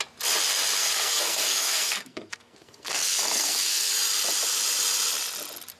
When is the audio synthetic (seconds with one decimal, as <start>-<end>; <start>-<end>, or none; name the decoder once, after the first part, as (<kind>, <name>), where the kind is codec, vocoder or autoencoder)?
0.8-3.9 (codec, SNAC)